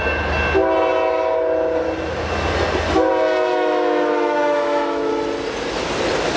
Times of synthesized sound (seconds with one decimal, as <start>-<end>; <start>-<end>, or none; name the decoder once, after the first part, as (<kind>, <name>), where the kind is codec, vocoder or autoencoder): 3.5-5.1 (autoencoder, DAC-VAE)